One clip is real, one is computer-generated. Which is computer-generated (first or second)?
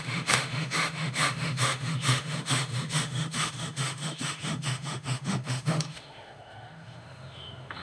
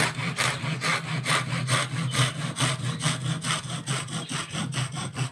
first